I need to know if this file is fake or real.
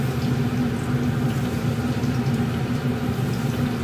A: real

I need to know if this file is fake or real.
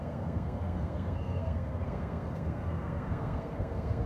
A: fake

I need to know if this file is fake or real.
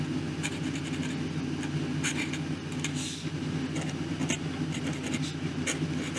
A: real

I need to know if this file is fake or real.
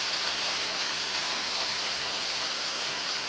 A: fake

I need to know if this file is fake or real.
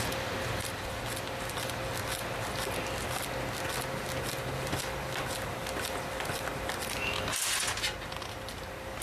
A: real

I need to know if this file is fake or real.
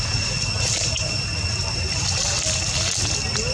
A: real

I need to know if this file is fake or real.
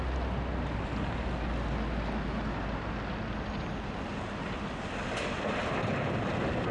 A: real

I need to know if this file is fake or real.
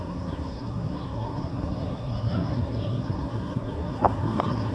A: fake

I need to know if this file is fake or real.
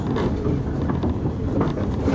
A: real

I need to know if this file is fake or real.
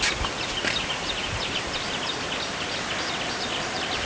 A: real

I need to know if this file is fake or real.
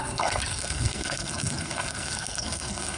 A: fake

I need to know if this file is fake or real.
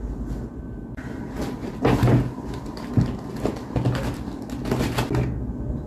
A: real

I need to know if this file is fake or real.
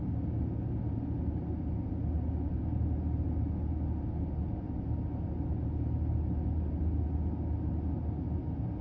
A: real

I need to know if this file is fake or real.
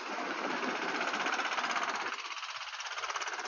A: real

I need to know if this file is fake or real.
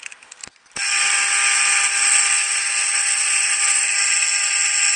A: real